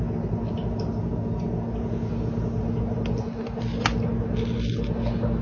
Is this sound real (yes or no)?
yes